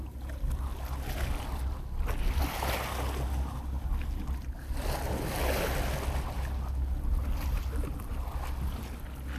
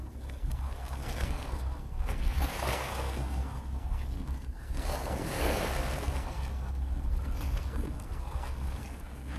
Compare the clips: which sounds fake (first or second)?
second